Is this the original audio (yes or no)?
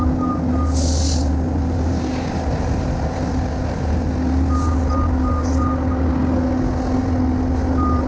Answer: yes